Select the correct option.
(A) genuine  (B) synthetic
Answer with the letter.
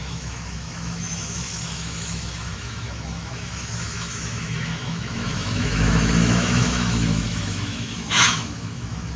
B